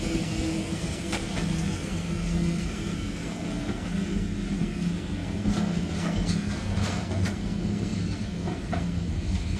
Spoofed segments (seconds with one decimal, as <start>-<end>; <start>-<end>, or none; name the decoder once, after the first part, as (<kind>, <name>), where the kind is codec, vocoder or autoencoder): 0.0-9.6 (codec, SNAC)

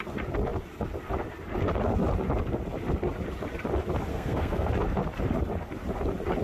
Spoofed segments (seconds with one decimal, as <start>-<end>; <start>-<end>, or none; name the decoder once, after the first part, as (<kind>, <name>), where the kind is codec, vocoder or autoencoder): 4.1-4.7 (codec, SNAC)

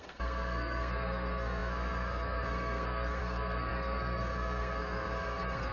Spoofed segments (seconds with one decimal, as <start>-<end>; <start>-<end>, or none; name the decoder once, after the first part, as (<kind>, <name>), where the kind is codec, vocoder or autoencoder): 0.0-5.7 (codec, SNAC)

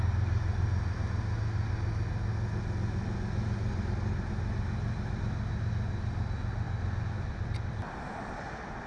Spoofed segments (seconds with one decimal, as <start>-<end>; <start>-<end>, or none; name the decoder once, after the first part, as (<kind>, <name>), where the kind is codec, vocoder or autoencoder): none

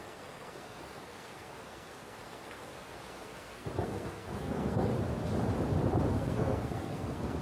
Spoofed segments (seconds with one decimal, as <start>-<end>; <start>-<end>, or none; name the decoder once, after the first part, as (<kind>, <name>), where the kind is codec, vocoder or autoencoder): 0.0-4.9 (codec, SNAC); 6.1-7.4

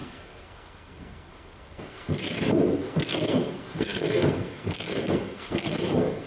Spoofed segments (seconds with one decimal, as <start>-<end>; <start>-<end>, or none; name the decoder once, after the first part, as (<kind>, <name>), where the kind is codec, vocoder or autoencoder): 0.0-6.3 (codec, SNAC)